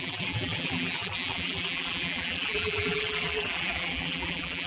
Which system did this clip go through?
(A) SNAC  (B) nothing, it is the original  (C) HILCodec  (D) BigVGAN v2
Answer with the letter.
D